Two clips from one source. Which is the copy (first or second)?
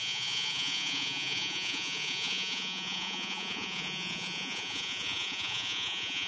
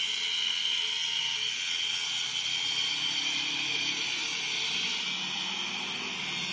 first